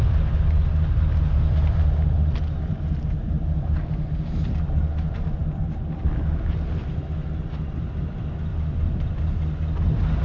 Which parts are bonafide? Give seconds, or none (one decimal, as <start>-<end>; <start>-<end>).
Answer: 0.0-10.2